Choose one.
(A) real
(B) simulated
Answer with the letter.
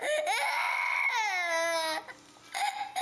A